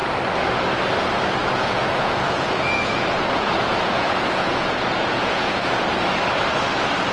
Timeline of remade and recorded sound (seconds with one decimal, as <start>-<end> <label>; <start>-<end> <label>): 0.0-1.4 recorded; 1.4-5.7 remade; 5.7-7.1 recorded